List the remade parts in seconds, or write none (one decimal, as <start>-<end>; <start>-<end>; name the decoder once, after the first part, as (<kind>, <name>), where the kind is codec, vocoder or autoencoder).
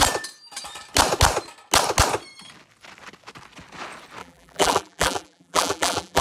4.2-6.2 (vocoder, BigVGAN v2)